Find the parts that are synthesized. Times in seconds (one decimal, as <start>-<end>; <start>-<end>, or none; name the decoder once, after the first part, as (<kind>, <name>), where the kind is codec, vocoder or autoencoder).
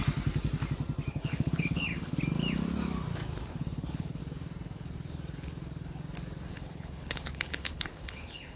1.1-1.9 (codec, HILCodec); 3.5-4.2; 6.5-8.6